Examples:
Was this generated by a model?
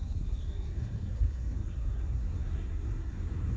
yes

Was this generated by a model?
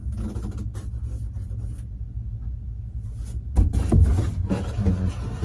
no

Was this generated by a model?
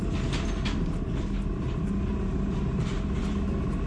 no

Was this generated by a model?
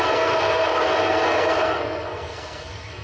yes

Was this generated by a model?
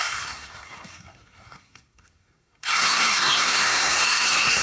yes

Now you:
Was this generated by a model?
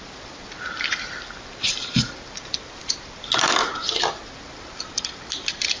no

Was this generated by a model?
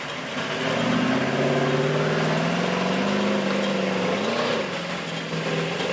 no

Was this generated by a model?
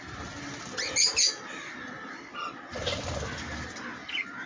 no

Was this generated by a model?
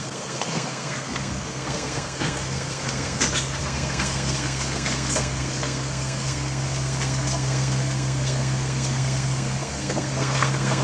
yes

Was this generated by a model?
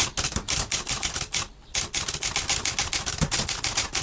no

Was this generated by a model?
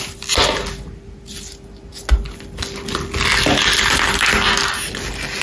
no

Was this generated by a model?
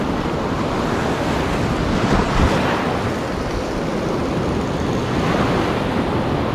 no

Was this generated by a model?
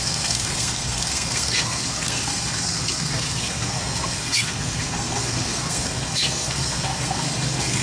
yes